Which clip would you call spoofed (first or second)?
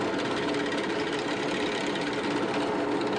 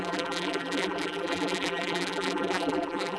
second